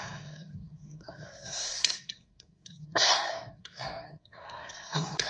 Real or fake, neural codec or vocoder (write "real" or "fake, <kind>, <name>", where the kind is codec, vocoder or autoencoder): fake, codec, SNAC